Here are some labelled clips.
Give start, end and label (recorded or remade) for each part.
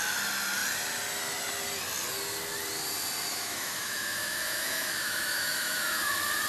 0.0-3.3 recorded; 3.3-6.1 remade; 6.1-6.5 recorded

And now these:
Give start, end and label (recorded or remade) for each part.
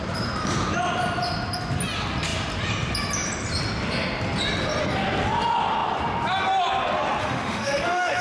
0.0-7.2 recorded; 7.2-8.2 remade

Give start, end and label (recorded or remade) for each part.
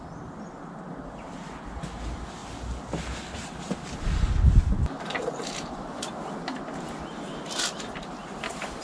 0.0-8.8 recorded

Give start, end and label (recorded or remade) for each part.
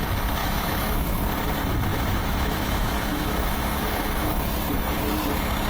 0.0-0.4 recorded; 0.4-1.2 remade; 1.2-1.9 recorded; 1.9-5.0 remade; 5.0-5.7 recorded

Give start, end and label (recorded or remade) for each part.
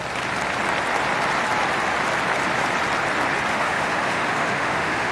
0.0-3.5 recorded; 3.5-5.1 remade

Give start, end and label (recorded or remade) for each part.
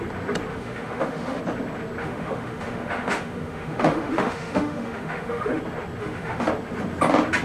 0.0-0.5 recorded; 0.5-1.4 remade; 1.4-2.0 recorded; 2.0-5.6 remade; 5.6-6.0 recorded; 6.0-6.5 remade; 6.5-7.4 recorded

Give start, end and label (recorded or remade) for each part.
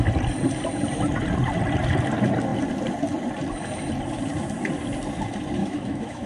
0.0-5.6 recorded; 5.6-6.3 remade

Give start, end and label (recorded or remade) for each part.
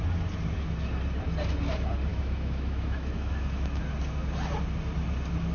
0.0-2.1 recorded; 2.1-3.8 remade; 3.8-5.5 recorded